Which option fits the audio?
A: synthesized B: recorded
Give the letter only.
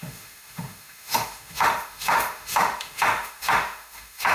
A